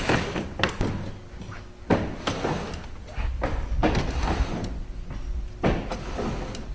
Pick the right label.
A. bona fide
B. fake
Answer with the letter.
A